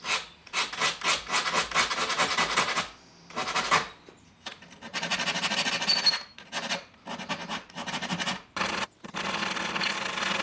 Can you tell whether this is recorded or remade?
recorded